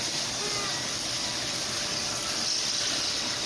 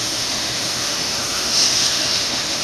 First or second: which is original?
first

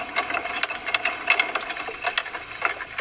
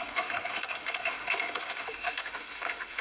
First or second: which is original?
first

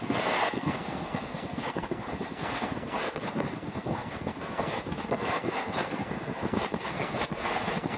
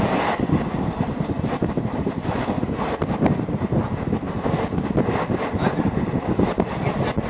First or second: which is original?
second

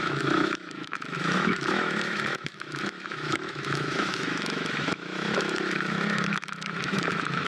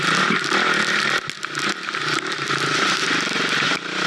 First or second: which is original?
second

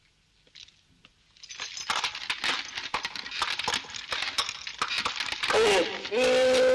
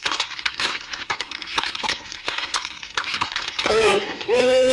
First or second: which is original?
first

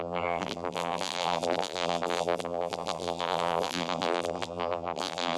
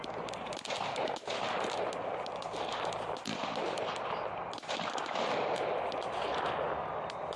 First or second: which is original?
second